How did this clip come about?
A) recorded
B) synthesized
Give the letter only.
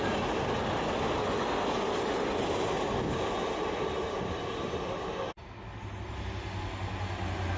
A